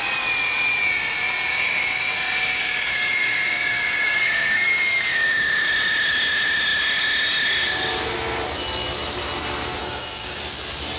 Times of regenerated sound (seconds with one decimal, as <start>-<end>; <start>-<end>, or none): 1.5-5.7; 9.8-10.4